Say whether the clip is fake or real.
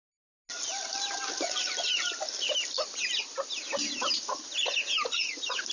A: real